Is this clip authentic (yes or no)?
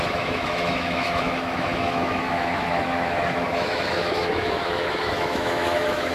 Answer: no